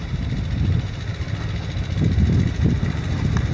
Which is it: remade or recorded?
recorded